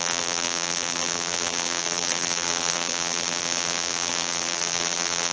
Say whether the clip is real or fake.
fake